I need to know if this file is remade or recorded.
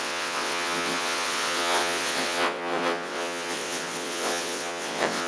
remade